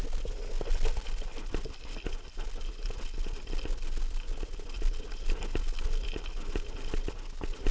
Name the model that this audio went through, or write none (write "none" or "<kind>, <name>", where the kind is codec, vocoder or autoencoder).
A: none